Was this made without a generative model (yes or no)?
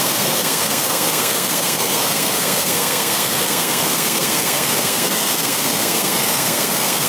no